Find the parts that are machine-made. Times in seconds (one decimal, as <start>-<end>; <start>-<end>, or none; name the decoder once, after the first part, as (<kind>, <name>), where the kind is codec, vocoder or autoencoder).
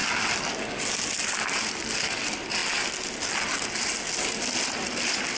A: 2.0-2.6 (vocoder, BigVGAN v2); 4.4-5.4